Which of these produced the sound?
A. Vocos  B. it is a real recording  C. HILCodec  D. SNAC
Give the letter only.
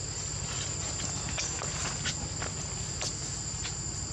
B